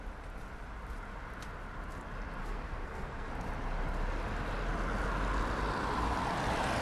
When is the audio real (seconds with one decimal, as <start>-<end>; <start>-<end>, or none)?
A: 0.0-2.4; 3.3-6.8